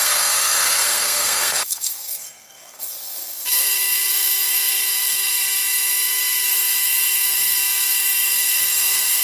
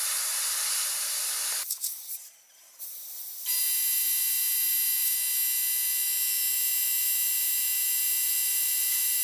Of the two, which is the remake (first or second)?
first